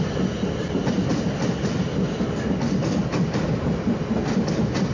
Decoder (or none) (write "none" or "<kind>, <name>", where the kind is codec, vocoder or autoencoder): none